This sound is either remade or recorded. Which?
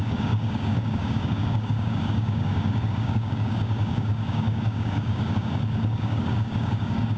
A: remade